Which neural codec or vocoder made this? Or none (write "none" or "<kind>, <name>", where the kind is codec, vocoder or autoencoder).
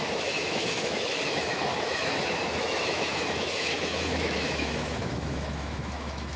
autoencoder, DAC-VAE